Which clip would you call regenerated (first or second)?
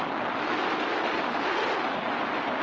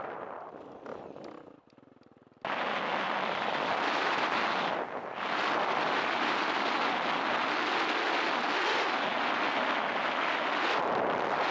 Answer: first